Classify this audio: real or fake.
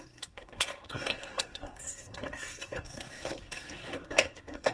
fake